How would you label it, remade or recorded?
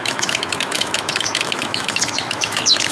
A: remade